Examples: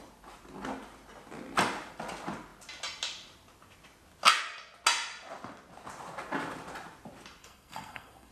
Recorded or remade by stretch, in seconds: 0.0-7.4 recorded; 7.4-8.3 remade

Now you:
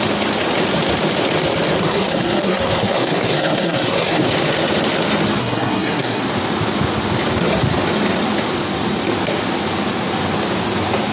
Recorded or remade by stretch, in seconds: 0.0-1.8 recorded; 1.8-4.3 remade; 4.3-5.4 recorded; 5.4-6.2 remade; 6.2-11.1 recorded

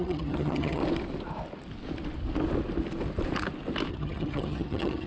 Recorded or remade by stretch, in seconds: 0.0-0.8 remade; 0.8-3.9 recorded; 3.9-5.1 remade

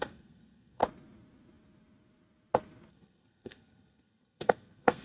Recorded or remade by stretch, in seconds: 0.0-0.8 remade; 0.8-2.9 recorded; 2.9-5.0 remade

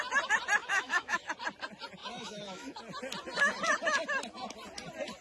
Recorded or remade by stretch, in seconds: 0.0-0.6 recorded; 0.6-1.3 remade; 1.3-2.0 recorded; 2.0-2.8 remade; 2.8-5.2 recorded

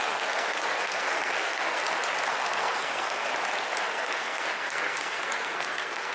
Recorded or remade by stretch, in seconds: 0.0-1.8 remade; 1.8-2.3 recorded; 2.3-3.3 remade; 3.3-3.8 recorded; 3.8-6.1 remade

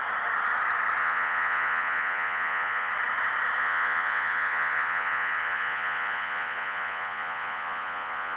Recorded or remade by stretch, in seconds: 0.0-1.0 recorded; 1.0-2.9 remade; 2.9-3.6 recorded; 3.6-8.4 remade

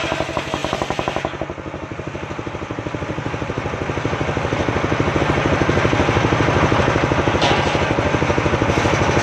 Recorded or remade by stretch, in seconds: 0.0-9.2 recorded